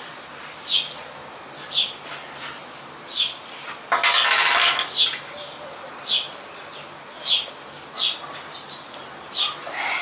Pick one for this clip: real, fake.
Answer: real